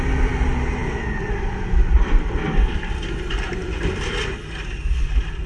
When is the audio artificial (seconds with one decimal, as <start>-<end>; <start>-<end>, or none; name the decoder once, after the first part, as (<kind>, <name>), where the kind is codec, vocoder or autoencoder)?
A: none